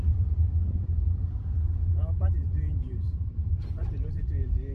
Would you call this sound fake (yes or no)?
yes